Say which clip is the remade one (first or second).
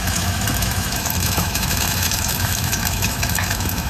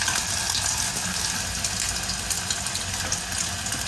first